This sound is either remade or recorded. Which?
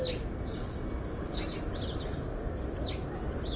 recorded